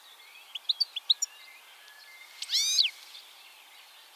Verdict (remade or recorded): recorded